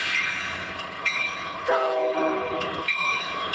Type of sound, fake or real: fake